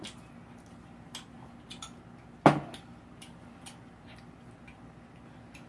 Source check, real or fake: real